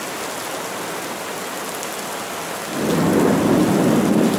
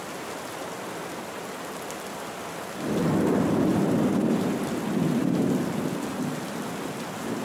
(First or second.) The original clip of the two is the first